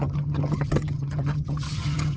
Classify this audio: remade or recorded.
remade